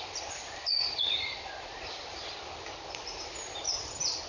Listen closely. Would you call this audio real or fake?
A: real